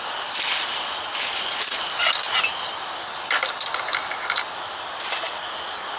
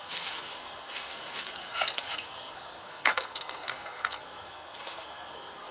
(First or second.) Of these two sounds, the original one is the first